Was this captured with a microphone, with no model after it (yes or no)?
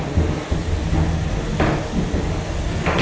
yes